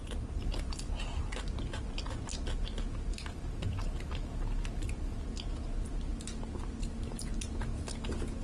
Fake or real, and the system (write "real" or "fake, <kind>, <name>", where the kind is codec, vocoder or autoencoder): real